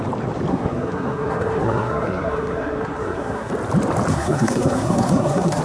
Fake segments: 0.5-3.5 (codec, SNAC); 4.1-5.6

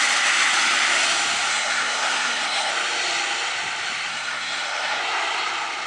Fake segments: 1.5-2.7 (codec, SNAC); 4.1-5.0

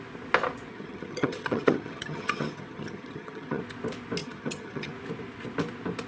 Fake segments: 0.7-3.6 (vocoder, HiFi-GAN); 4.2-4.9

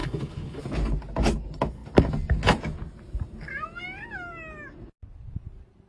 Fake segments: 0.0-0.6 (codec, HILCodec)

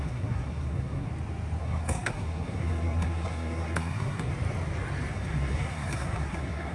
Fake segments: 0.0-1.1 (codec, SNAC); 1.6-4.3; 5.1-6.7

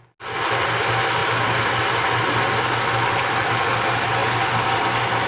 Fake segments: none

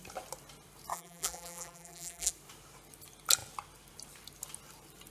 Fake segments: 0.9-2.3 (vocoder, BigVGAN v2)